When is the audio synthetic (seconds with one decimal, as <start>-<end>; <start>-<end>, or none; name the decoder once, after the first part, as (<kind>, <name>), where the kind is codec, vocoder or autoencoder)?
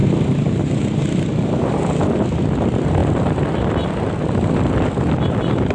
0.0-1.7 (vocoder, BigVGAN v2)